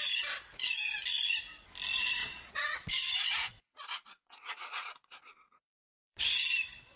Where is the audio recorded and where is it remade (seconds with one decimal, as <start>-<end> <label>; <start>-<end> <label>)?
0.0-2.2 recorded; 2.2-6.2 remade; 6.2-7.0 recorded